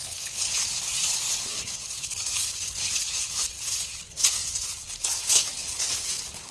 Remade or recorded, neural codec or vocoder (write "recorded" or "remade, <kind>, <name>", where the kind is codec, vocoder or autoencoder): remade, codec, HILCodec